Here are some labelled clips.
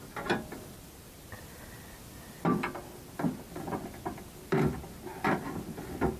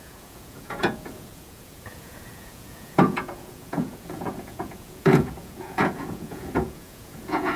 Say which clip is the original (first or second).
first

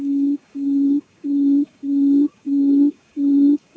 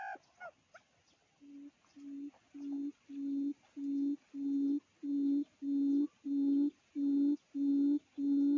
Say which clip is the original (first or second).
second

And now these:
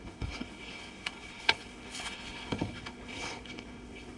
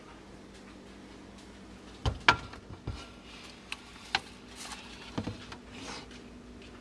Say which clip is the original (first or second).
second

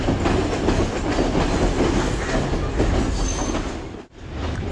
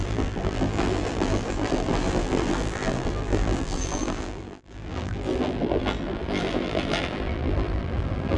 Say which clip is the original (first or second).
first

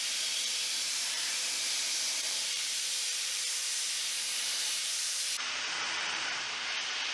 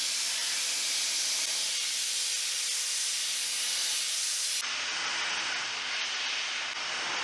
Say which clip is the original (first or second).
second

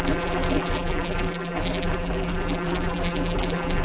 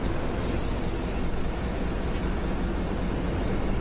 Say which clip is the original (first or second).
second